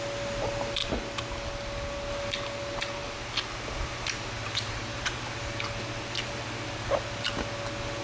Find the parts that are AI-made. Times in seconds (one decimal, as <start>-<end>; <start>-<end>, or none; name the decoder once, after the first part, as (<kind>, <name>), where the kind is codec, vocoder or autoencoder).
none